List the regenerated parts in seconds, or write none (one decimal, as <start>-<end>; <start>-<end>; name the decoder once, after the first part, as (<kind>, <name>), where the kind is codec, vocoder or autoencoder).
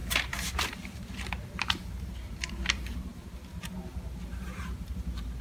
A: 0.0-5.4 (vocoder, BigVGAN v2)